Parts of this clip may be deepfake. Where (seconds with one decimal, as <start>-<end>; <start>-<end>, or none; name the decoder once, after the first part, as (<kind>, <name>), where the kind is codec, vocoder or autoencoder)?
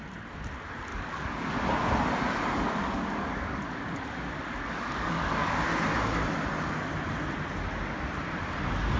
0.9-1.5 (codec, DAC); 2.8-5.6